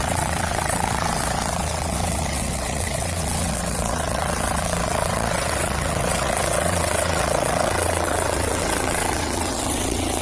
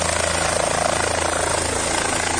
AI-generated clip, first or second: first